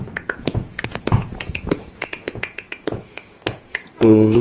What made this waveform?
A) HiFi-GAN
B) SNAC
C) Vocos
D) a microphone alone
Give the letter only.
C